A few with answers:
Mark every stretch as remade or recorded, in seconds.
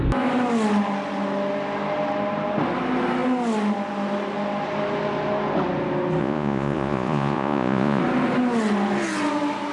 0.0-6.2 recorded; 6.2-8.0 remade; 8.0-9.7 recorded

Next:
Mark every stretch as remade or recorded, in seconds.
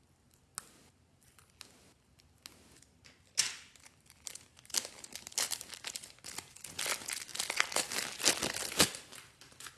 0.0-9.8 recorded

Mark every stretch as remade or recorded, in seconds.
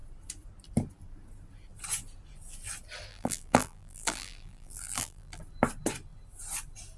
0.0-3.1 recorded; 3.1-5.4 remade; 5.4-7.0 recorded